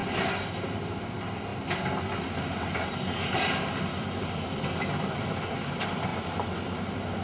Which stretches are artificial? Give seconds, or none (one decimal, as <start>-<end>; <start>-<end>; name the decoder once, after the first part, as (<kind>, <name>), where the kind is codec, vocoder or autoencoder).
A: 6.1-6.8 (vocoder, BigVGAN v2)